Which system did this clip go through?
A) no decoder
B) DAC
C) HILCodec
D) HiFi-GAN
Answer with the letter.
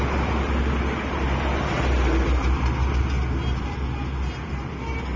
A